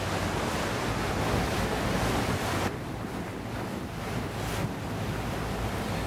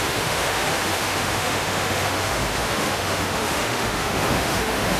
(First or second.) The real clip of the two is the first